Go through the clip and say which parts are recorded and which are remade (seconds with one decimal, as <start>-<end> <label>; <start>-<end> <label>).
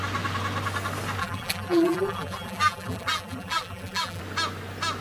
0.0-1.2 recorded; 1.2-4.2 remade; 4.2-5.0 recorded